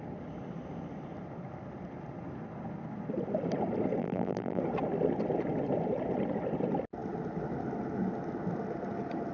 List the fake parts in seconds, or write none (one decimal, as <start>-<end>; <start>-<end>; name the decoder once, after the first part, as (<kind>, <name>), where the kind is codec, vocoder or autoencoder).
4.0-4.6 (vocoder, BigVGAN v2)